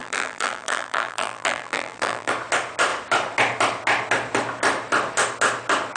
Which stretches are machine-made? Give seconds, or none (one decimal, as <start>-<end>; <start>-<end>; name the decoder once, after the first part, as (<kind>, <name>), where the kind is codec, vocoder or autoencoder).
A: 0.0-2.3 (vocoder, BigVGAN v2)